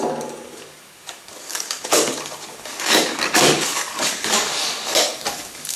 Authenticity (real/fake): fake